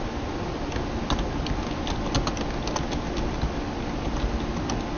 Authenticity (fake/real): real